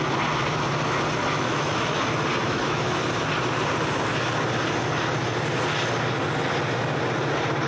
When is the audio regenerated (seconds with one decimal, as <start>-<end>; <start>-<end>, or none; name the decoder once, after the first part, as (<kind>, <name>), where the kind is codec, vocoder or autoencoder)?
1.2-2.0 (autoencoder, DAC-VAE); 2.4-3.1